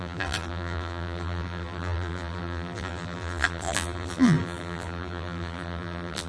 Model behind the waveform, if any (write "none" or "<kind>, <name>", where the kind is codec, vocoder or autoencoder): vocoder, BigVGAN v2